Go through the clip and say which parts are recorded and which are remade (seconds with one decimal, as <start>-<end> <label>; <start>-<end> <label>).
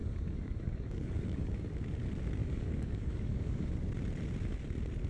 0.0-1.8 remade; 1.8-2.4 recorded; 2.4-3.7 remade; 3.7-5.1 recorded